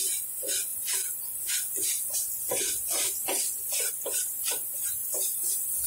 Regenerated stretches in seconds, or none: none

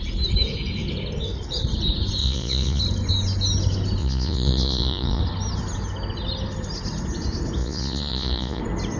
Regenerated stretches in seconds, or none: 2.2-2.8 (vocoder, Vocos); 4.0-5.2; 7.6-8.6

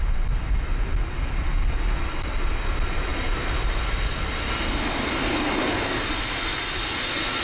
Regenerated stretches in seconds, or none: none

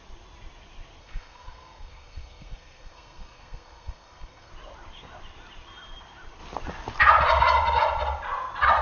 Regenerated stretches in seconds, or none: 1.0-4.5 (codec, SNAC)

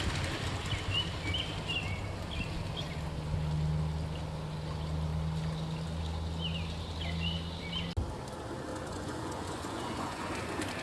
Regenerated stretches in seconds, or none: 8.7-10.3 (vocoder, Vocos)

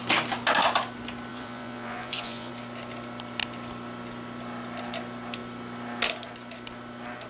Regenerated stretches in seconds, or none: 1.3-2.5 (vocoder, Vocos)

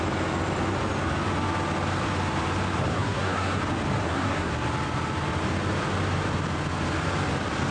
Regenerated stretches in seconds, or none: 2.9-3.6 (codec, SNAC); 4.0-4.5